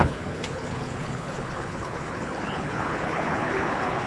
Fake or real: fake